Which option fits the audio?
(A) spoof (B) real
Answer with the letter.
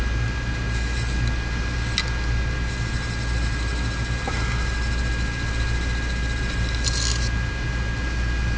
B